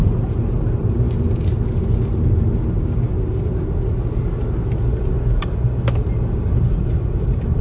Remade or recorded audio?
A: recorded